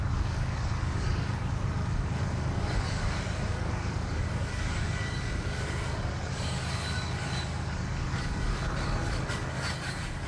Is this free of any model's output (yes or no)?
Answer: no